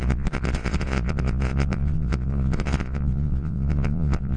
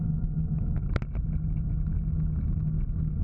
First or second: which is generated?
first